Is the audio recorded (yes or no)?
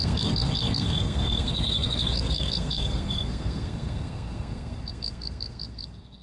no